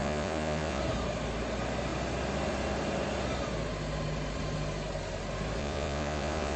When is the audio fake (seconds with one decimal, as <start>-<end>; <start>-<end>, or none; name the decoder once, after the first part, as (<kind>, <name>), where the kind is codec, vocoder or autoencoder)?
0.0-0.8 (vocoder, Vocos); 5.6-6.6